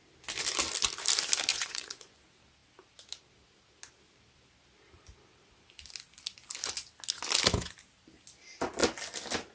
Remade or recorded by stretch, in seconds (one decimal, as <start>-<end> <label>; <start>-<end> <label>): 0.0-1.5 recorded; 1.5-2.2 remade; 2.2-9.5 recorded